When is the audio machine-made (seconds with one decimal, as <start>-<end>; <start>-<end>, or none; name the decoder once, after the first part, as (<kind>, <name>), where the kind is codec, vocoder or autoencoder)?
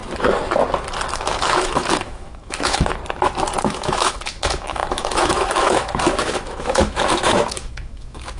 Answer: 1.1-3.0 (autoencoder, DAC-VAE); 3.6-8.4